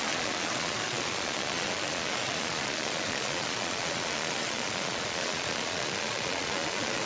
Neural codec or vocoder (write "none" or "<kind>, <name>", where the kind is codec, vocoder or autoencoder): vocoder, Vocos